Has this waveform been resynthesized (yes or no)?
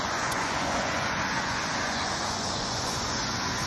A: yes